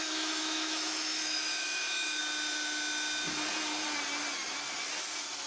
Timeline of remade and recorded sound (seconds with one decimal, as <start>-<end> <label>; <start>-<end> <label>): 0.0-2.2 remade; 2.2-5.5 recorded